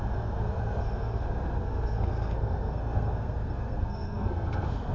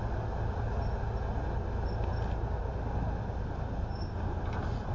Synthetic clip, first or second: first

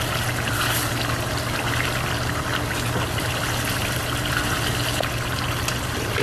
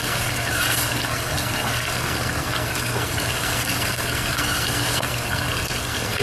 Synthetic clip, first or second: second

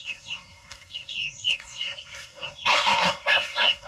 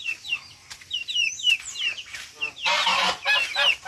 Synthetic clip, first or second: first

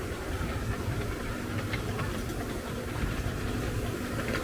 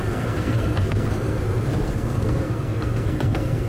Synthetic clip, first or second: second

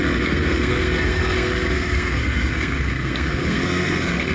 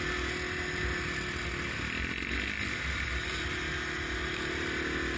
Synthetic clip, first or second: first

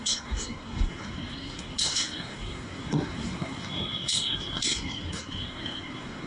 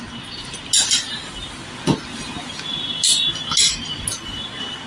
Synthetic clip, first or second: first